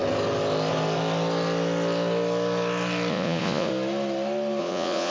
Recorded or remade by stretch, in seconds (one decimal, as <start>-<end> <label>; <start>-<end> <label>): 0.0-3.1 recorded; 3.1-3.7 remade; 3.7-4.6 recorded; 4.6-5.1 remade